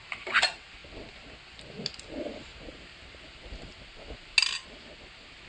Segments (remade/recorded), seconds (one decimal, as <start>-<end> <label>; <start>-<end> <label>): 0.0-5.5 recorded